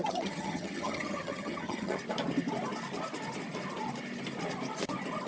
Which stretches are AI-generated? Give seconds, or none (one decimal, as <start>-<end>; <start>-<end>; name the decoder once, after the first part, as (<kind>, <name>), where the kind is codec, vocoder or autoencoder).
0.0-2.0 (vocoder, HiFi-GAN)